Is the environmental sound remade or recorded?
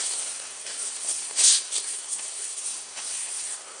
remade